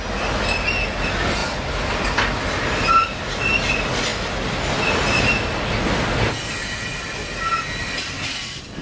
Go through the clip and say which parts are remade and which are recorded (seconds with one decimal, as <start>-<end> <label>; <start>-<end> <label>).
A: 0.0-8.8 recorded